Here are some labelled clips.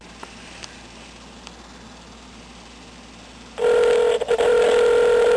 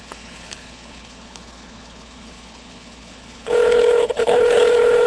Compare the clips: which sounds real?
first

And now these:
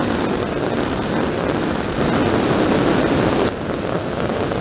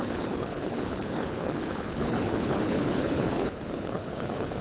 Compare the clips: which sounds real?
first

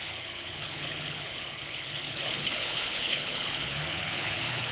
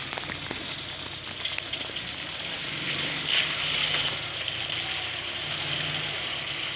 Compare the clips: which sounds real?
second